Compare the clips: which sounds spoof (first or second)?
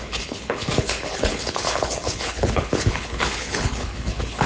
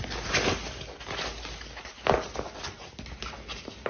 first